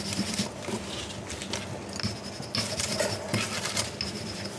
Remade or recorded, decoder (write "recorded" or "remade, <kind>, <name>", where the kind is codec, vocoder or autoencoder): recorded